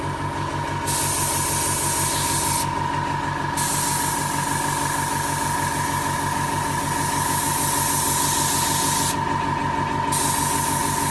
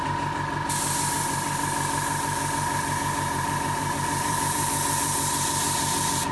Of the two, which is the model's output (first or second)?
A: second